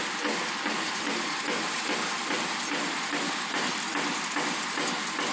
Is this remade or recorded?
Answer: recorded